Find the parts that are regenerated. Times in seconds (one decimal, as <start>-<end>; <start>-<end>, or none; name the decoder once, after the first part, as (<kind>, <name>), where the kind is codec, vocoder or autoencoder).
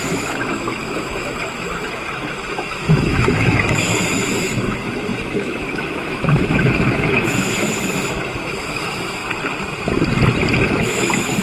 0.0-9.2 (autoencoder, DAC-VAE); 10.6-11.4